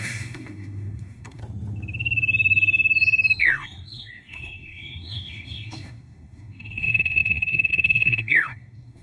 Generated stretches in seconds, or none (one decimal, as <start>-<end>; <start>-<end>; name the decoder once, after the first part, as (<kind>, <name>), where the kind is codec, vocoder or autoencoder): 0.0-1.4 (codec, SNAC); 3.4-9.0

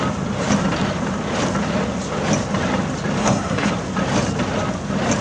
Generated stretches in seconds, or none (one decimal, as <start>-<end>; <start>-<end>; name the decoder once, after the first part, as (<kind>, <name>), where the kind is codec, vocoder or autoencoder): 3.2-3.7 (codec, SNAC)